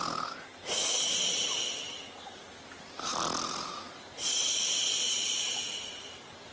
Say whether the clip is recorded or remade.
recorded